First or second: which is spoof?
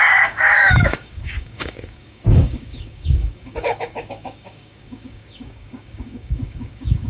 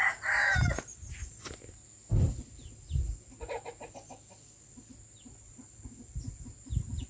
first